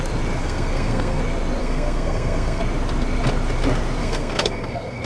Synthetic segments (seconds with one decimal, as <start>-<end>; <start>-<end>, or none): 0.4-1.2; 1.6-2.6; 4.0-5.0